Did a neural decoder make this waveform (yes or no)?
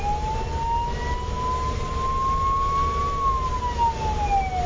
no